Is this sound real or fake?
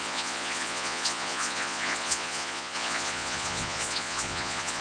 fake